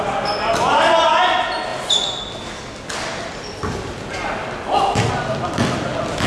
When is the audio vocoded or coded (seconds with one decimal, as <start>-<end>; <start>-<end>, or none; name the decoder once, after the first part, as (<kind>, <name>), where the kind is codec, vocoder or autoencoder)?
none